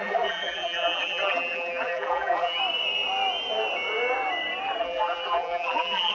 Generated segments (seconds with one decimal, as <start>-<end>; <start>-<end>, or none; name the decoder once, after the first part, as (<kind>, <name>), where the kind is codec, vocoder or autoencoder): 0.0-2.6 (vocoder, BigVGAN v2); 4.8-6.1